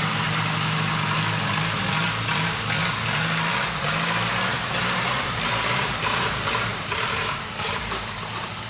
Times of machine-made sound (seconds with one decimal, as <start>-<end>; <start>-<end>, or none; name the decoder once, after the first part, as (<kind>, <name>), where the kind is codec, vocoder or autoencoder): 4.5-8.7 (vocoder, BigVGAN v2)